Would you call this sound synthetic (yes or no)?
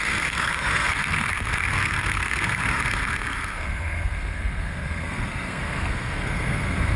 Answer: yes